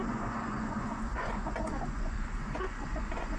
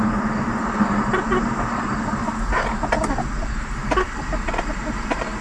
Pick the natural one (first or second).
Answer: second